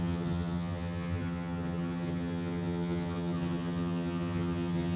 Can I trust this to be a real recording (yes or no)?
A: no